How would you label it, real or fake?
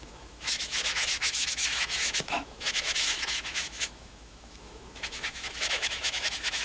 fake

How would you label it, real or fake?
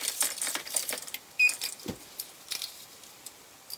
fake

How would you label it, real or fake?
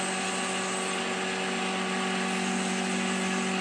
real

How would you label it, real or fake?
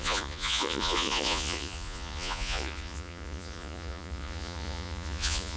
fake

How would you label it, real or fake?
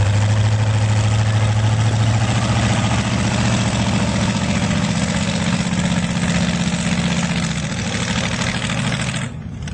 real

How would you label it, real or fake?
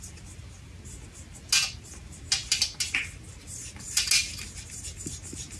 real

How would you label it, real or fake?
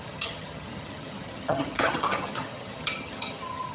fake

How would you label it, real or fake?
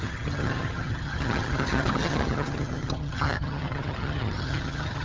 fake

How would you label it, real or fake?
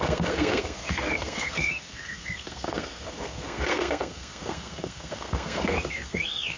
fake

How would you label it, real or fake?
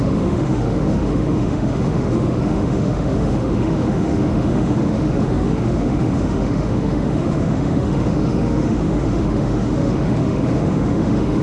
fake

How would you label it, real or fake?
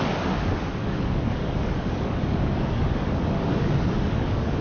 fake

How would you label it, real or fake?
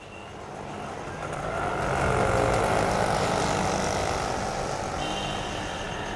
real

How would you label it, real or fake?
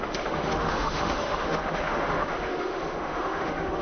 fake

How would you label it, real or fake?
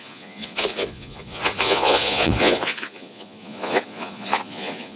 fake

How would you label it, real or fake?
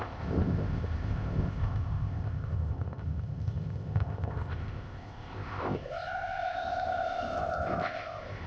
fake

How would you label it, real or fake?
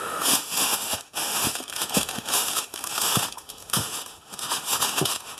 fake